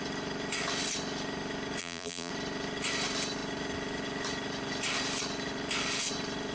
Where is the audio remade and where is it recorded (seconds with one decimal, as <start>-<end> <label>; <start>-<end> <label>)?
0.0-1.8 recorded; 1.8-2.3 remade; 2.3-6.5 recorded